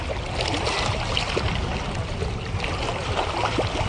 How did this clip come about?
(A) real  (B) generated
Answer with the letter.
A